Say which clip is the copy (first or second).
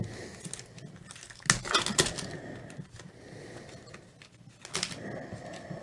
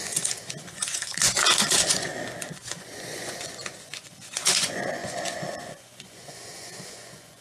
second